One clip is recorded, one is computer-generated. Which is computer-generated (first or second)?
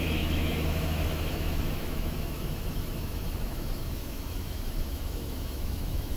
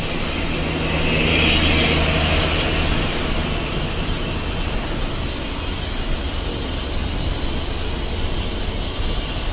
first